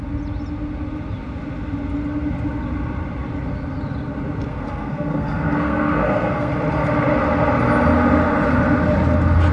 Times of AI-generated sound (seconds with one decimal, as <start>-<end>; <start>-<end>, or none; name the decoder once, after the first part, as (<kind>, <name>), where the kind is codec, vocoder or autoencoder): 4.5-6.5 (codec, SNAC)